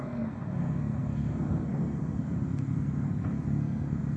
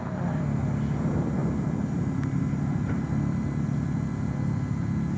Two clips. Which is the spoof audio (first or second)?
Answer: first